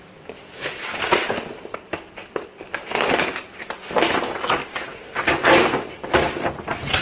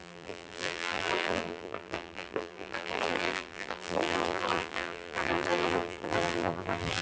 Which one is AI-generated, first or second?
second